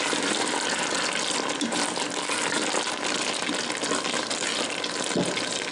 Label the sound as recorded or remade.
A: recorded